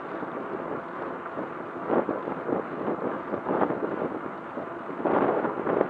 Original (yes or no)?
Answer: yes